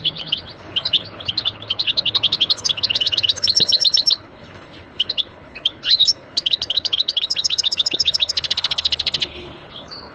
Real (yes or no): no